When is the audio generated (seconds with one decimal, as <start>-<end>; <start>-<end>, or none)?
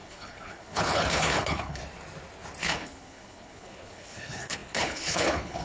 0.0-1.8; 2.6-5.6